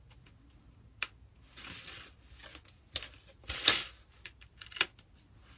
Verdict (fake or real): real